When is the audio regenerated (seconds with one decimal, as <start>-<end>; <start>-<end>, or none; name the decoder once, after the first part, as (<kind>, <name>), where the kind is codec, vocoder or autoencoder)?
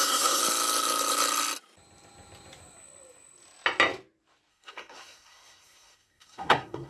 0.0-0.4 (codec, SNAC); 4.5-6.9